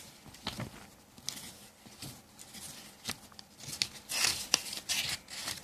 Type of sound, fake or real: real